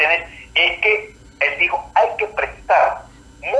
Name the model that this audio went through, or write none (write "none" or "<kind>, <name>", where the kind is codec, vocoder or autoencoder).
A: none